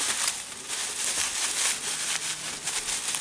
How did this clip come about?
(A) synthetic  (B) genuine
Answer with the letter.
B